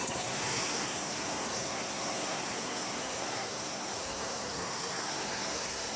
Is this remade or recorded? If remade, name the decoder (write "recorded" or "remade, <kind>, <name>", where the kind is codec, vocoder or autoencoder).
remade, codec, SNAC